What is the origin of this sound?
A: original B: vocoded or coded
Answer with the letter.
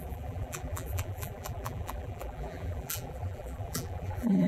B